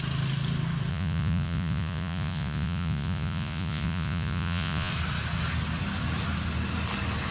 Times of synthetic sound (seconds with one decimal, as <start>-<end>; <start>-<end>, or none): 0.9-4.9